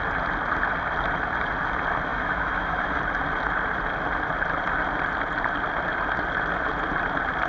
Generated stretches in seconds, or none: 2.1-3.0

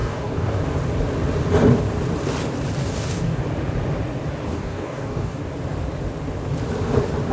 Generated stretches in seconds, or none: 0.0-0.6; 2.8-3.4; 4.5-5.4

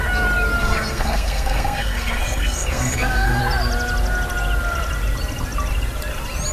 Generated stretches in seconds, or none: 0.6-3.4